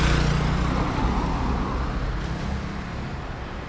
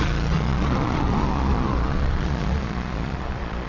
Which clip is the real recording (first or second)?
first